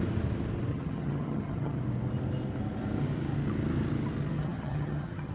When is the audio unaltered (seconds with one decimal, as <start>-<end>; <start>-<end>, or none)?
0.0-0.7; 1.8-4.4